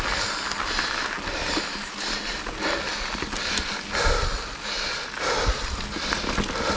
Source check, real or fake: real